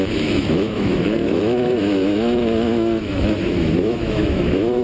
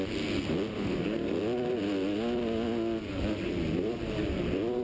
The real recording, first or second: second